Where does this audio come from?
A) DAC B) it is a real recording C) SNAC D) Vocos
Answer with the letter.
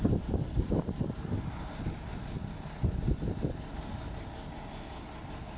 B